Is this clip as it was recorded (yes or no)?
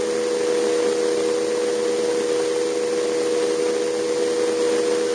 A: yes